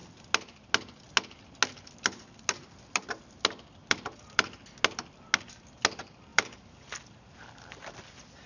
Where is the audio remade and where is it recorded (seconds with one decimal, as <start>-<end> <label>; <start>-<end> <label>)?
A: 0.0-3.8 recorded; 3.8-4.6 remade; 4.6-6.3 recorded; 6.3-7.0 remade; 7.0-8.5 recorded